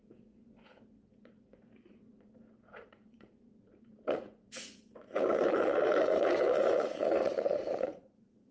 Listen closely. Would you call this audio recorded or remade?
remade